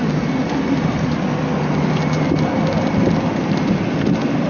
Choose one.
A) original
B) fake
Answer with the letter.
A